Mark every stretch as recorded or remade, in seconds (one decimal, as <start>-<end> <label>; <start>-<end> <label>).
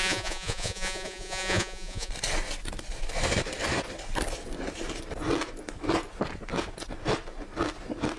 0.0-2.1 remade; 2.1-8.2 recorded